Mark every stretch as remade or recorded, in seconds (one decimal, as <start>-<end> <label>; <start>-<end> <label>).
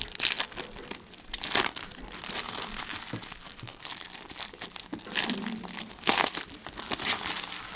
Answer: 0.0-3.4 recorded; 3.4-3.9 remade; 3.9-5.9 recorded; 5.9-6.4 remade; 6.4-7.8 recorded